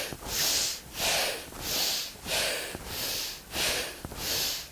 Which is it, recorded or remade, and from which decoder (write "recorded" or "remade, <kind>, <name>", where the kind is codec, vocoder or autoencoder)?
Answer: recorded